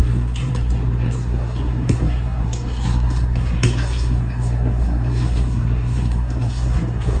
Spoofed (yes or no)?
yes